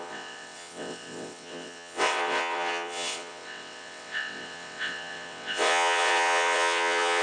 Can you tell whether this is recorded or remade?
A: remade